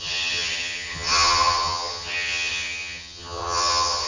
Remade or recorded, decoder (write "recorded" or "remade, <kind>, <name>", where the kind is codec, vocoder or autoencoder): remade, vocoder, HiFi-GAN